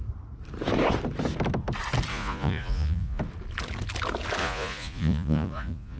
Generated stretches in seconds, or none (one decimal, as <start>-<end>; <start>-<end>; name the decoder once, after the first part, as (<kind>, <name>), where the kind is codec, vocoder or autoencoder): 2.1-3.2 (vocoder, Vocos); 4.4-6.0